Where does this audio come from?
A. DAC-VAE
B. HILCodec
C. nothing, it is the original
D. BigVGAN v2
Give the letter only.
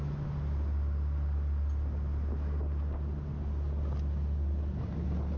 C